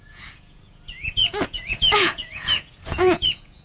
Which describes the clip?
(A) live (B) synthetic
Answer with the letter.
B